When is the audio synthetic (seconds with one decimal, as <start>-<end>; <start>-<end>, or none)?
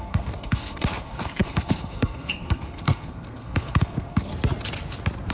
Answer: 0.0-4.3